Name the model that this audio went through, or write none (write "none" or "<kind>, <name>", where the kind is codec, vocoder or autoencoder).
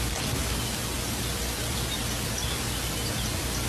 none